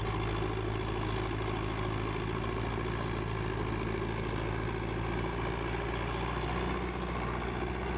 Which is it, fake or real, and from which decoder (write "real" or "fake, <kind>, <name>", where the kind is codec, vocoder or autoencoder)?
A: real